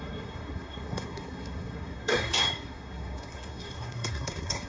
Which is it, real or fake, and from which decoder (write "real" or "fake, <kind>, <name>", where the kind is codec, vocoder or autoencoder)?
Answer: fake, codec, SNAC